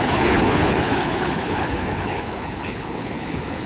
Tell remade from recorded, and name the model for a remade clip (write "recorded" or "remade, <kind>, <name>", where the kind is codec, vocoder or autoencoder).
remade, codec, HILCodec